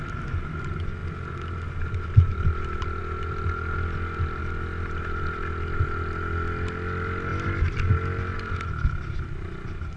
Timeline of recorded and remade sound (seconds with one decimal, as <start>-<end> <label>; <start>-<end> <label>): 0.0-10.0 recorded